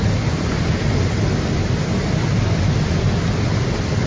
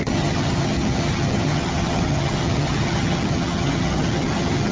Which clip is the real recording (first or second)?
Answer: first